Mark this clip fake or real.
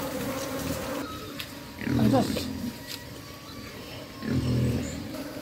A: fake